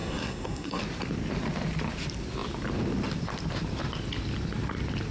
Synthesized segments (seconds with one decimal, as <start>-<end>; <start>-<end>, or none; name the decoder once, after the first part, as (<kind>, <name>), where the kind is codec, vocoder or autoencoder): 0.0-0.8 (codec, SNAC)